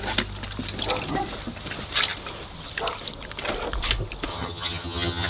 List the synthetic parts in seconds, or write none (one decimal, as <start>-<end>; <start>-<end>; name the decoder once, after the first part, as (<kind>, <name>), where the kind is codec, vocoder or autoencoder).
4.3-5.3 (vocoder, HiFi-GAN)